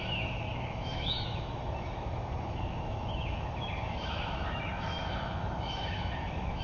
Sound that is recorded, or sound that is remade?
remade